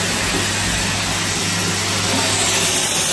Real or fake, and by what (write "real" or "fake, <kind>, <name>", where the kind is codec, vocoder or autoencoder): real